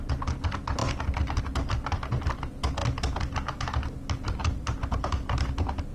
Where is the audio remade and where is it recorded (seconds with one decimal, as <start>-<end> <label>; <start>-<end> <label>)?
0.0-5.9 recorded